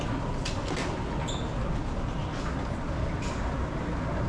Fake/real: real